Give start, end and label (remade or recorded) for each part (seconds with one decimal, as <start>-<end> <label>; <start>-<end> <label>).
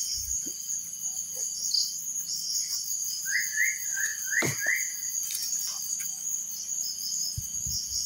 0.0-8.1 recorded